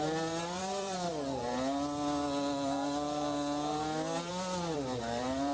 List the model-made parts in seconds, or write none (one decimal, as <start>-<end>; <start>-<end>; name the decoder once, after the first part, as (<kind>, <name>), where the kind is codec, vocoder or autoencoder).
0.0-1.1 (vocoder, BigVGAN v2); 4.3-5.5